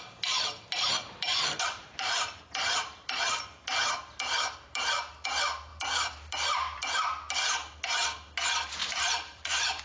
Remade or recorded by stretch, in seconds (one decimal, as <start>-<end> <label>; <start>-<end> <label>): 0.0-1.3 recorded; 1.3-2.4 remade; 2.4-5.7 recorded; 5.7-6.9 remade; 6.9-8.8 recorded; 8.8-9.8 remade